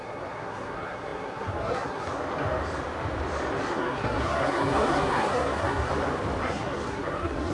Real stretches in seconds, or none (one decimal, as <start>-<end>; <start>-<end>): 2.1-3.6; 5.9-6.4